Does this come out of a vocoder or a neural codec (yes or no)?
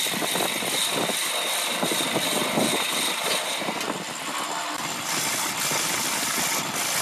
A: no